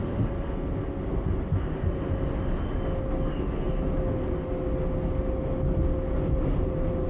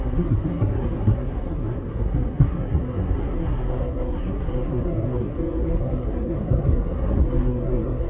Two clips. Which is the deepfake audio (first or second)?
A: second